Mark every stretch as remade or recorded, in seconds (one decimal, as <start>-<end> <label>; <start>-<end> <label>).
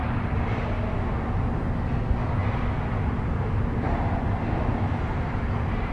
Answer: 0.0-5.9 recorded